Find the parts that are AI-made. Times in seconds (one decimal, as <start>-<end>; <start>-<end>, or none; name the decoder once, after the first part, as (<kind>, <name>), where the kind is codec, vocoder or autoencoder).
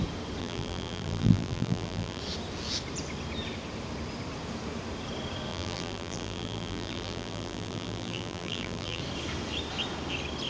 0.4-2.2 (vocoder, BigVGAN v2); 5.5-9.0